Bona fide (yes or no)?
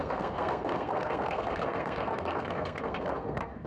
no